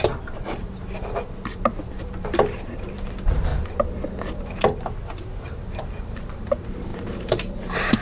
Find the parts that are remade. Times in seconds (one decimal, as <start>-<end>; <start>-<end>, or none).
0.0-3.5; 5.7-8.0